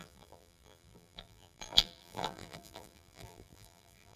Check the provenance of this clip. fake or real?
fake